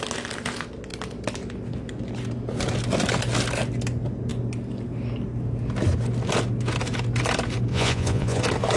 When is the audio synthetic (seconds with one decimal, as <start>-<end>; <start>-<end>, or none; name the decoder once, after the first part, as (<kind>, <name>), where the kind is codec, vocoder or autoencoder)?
7.7-8.4 (vocoder, Vocos)